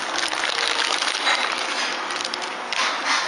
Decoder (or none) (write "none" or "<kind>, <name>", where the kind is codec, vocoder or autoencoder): none